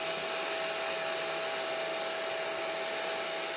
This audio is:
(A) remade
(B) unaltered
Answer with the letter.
B